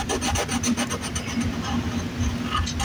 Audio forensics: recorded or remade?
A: recorded